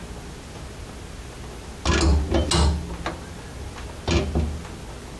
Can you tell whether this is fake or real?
real